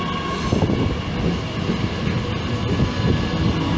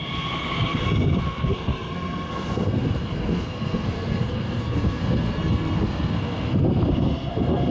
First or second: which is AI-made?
second